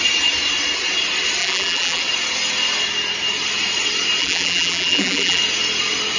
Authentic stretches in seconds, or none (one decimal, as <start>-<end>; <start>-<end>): 0.0-1.4; 2.0-4.2; 5.4-6.2